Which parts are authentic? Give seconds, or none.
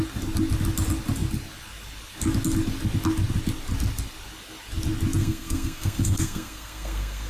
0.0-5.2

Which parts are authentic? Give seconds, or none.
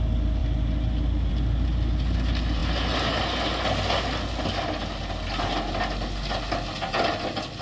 0.0-7.6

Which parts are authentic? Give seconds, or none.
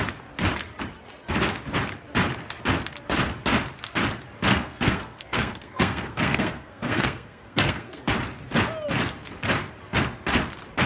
0.0-4.5; 8.0-10.9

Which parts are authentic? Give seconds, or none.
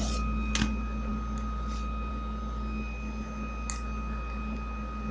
0.0-5.1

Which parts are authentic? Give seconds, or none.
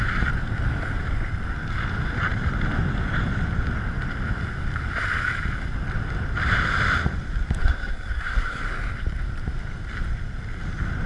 0.0-7.6; 8.6-11.1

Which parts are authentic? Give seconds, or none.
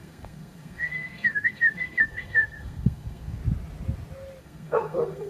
3.4-4.4